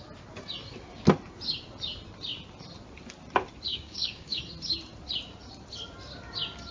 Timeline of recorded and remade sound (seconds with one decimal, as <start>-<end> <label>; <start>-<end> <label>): 0.0-3.7 recorded; 3.7-4.4 remade; 4.4-6.7 recorded